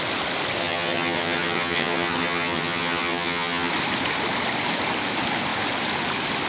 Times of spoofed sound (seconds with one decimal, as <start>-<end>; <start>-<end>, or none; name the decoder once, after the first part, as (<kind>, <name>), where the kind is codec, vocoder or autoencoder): 0.6-3.7 (vocoder, HiFi-GAN)